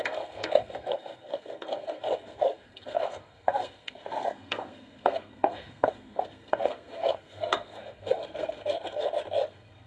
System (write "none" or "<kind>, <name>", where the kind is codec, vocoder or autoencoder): codec, SNAC